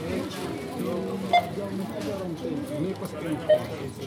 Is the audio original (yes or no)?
yes